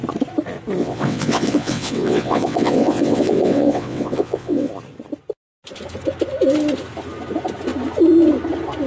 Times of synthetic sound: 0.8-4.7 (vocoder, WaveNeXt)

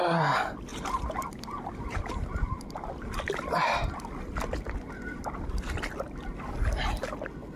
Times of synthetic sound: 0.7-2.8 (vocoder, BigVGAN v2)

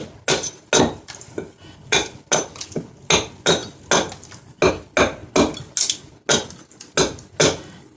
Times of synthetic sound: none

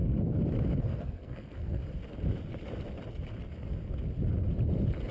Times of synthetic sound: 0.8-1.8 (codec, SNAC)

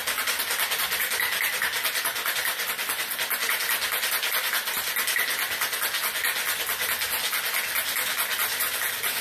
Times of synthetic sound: none

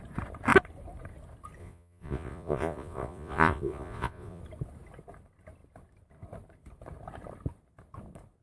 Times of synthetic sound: 1.6-4.4 (vocoder, Vocos)

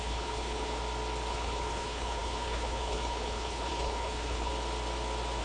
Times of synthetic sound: 0.0-0.8 (codec, HILCodec); 1.3-4.5